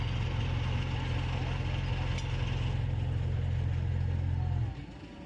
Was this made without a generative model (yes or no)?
yes